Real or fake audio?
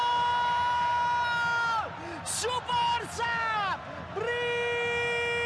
real